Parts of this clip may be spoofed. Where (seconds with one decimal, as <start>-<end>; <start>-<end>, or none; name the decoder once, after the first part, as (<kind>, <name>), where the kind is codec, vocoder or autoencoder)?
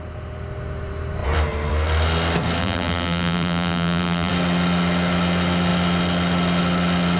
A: 2.6-4.3 (vocoder, BigVGAN v2)